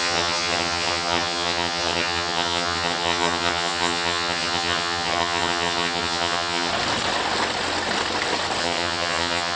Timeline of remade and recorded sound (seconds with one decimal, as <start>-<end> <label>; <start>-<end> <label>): 0.0-6.7 remade; 6.7-8.6 recorded; 8.6-9.6 remade